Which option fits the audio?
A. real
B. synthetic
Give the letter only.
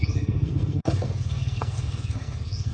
B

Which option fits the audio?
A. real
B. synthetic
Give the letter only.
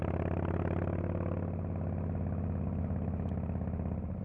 A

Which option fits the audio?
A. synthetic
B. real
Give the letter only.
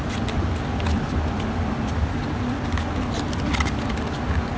B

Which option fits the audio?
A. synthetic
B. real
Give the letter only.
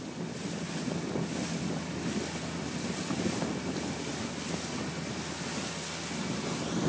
B